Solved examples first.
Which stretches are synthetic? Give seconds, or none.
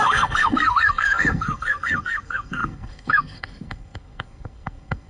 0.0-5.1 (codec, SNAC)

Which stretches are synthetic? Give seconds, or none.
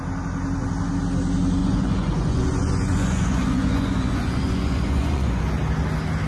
1.6-5.4 (vocoder, Vocos)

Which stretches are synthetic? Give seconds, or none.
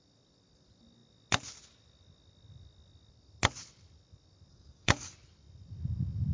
4.5-5.1 (codec, DAC)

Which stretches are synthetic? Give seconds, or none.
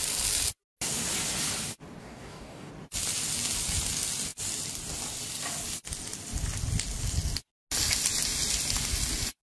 2.0-2.7 (codec, DAC)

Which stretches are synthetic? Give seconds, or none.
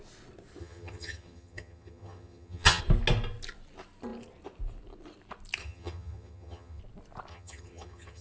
0.6-2.8 (vocoder, HiFi-GAN); 5.6-6.8; 7.3-8.2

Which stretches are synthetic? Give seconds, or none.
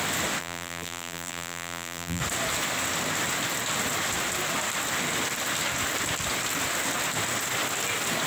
0.4-2.2 (vocoder, BigVGAN v2)